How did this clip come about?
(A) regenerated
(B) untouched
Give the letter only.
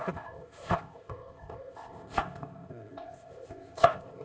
A